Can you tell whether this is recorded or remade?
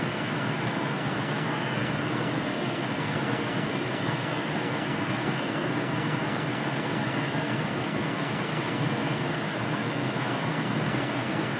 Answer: remade